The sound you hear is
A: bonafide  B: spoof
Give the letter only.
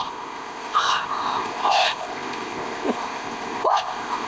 B